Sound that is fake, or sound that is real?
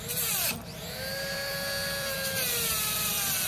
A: real